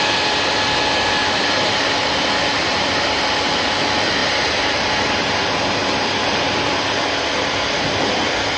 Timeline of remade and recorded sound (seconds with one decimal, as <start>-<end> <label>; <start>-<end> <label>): 0.0-1.2 recorded; 1.2-2.2 remade; 2.2-2.7 recorded; 2.7-3.3 remade; 3.3-4.2 recorded; 4.2-5.0 remade; 5.0-8.6 recorded